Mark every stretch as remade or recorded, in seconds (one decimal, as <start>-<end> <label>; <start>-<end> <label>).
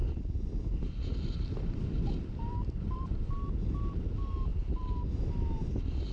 0.0-0.6 remade; 0.6-1.1 recorded; 1.1-3.3 remade; 3.3-4.5 recorded; 4.5-5.2 remade; 5.2-6.1 recorded